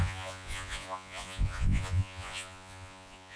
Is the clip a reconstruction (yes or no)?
yes